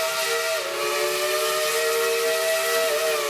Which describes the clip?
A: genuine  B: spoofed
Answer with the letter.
A